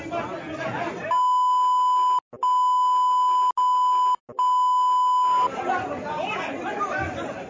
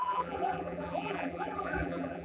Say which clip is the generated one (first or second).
second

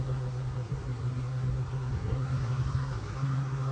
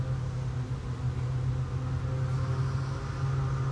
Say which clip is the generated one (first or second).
first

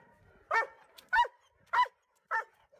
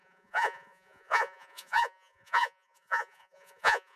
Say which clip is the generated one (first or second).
second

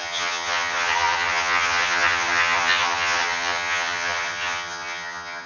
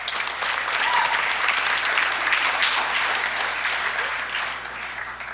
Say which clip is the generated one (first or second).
first